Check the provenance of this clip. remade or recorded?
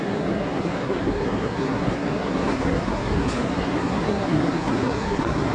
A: remade